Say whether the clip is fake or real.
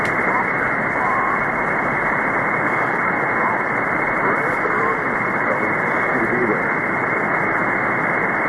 real